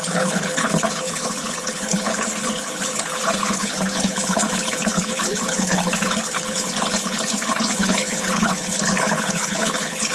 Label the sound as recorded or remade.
remade